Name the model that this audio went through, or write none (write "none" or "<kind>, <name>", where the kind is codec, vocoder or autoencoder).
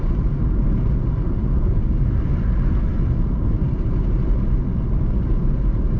none